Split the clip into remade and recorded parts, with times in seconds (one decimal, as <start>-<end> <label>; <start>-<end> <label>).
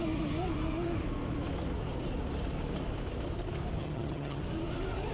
0.0-3.8 recorded; 3.8-4.4 remade; 4.4-5.1 recorded